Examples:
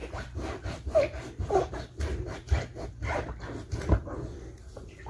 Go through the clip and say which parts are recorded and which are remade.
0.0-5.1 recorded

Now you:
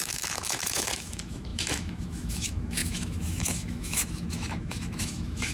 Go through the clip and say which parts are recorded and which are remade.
0.0-5.5 remade

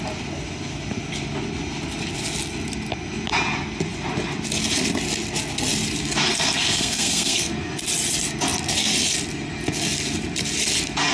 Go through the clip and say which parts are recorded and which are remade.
0.0-6.3 recorded; 6.3-7.5 remade; 7.5-11.1 recorded

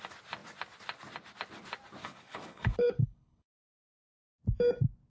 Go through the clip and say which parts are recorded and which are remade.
0.0-2.0 recorded; 2.0-3.7 remade; 3.7-5.1 recorded

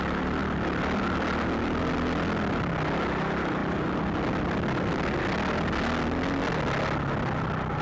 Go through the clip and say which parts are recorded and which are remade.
0.0-7.8 recorded